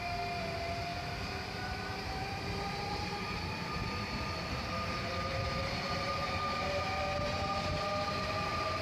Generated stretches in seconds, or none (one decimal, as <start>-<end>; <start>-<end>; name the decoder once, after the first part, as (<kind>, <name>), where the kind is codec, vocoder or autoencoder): 0.9-4.8 (vocoder, BigVGAN v2); 6.0-6.9